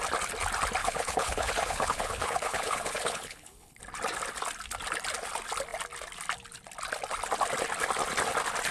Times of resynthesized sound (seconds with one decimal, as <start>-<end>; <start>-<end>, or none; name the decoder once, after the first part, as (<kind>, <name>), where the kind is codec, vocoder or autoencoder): 0.8-3.8 (codec, HILCodec)